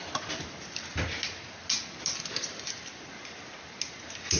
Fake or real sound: real